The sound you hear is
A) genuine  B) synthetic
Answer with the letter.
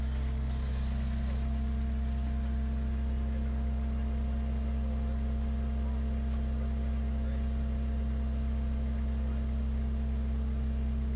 A